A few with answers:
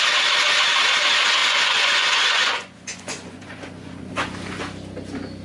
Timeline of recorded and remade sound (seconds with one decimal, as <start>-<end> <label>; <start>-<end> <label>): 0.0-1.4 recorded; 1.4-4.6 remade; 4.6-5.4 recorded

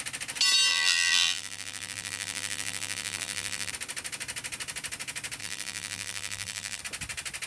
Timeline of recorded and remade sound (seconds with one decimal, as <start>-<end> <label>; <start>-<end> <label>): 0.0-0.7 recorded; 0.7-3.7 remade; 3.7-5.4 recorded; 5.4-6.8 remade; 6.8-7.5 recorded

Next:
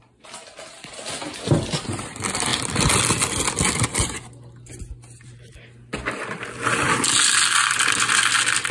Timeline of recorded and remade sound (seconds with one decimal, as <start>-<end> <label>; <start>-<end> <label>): 0.0-8.7 recorded